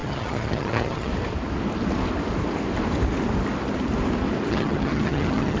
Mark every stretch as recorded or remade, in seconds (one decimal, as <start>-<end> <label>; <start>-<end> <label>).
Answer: 0.0-1.1 remade; 1.1-4.5 recorded; 4.5-5.6 remade